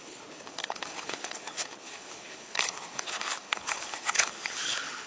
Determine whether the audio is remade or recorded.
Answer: remade